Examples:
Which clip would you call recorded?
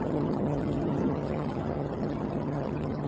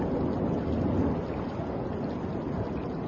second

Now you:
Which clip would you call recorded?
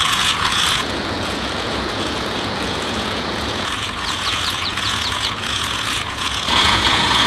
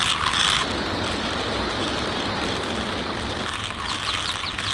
second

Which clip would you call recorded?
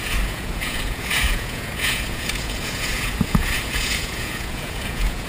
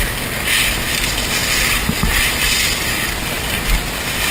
second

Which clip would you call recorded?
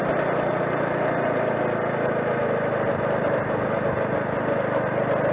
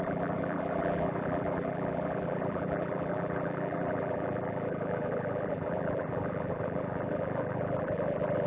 first